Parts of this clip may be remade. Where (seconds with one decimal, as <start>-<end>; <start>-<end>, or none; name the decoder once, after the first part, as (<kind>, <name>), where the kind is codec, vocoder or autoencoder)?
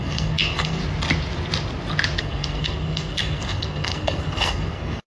0.0-0.8 (codec, SNAC); 2.2-5.1